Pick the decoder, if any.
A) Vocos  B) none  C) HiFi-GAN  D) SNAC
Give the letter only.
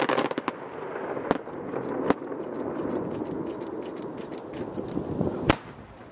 B